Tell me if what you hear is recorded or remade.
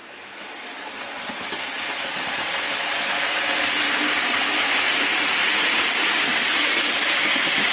recorded